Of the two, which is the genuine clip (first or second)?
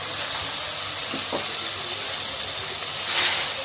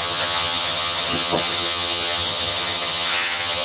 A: first